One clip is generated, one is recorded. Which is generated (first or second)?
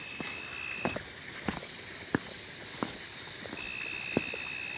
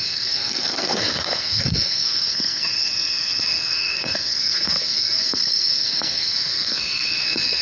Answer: second